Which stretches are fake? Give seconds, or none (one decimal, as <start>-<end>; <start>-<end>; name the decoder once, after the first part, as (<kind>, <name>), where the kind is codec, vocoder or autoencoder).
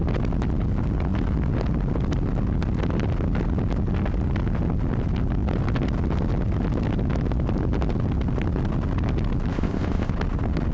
9.5-10.1 (codec, ZipCodec)